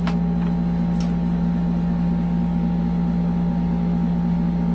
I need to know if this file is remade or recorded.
recorded